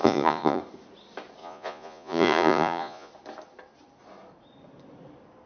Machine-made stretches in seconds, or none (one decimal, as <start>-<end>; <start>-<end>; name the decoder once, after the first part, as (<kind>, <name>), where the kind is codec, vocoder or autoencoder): 0.0-0.6 (vocoder, Vocos); 1.4-3.1